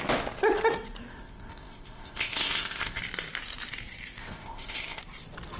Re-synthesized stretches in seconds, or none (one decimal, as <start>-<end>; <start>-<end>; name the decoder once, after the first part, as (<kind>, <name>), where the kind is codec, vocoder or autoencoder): 1.1-3.0 (codec, ZipCodec); 4.2-5.0